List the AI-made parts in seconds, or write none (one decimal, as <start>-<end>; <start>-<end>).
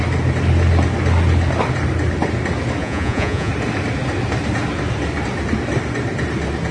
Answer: 2.8-3.5